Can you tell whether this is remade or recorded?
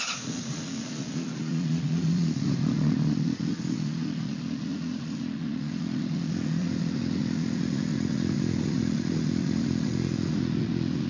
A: remade